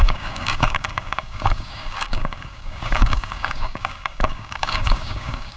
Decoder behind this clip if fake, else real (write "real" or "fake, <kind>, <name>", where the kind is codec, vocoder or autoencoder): fake, codec, DAC